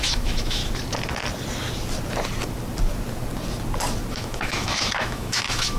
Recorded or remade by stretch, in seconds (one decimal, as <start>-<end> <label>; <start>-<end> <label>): 0.0-0.6 remade; 0.6-4.1 recorded; 4.1-5.8 remade